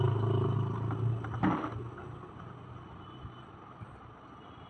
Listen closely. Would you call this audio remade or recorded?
recorded